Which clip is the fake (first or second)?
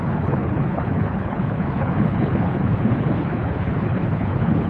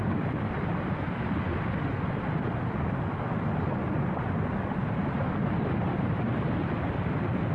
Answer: first